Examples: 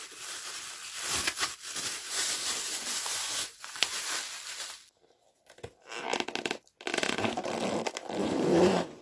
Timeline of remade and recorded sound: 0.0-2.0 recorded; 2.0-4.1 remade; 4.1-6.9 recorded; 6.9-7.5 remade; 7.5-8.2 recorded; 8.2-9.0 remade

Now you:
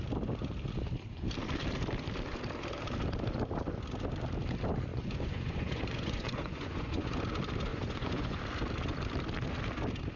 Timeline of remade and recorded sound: 0.0-4.9 recorded; 4.9-7.2 remade; 7.2-7.7 recorded; 7.7-8.4 remade; 8.4-10.2 recorded

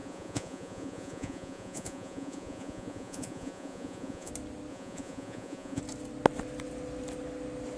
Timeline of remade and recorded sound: 0.0-4.3 remade; 4.3-4.7 recorded; 4.7-5.8 remade; 5.8-7.8 recorded